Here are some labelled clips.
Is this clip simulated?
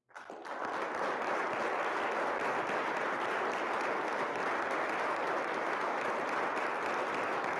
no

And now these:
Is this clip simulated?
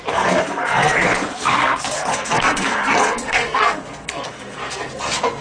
yes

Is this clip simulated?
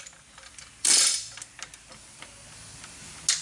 no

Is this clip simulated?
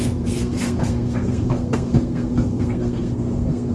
yes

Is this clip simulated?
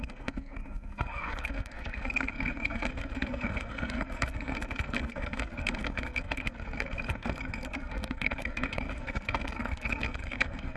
yes